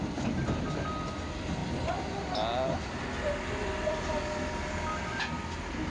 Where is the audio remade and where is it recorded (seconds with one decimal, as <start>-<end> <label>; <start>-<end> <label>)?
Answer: 0.0-5.9 recorded